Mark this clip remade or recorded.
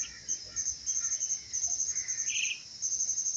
recorded